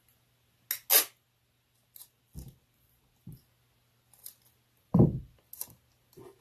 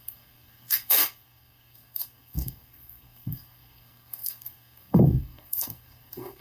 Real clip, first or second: first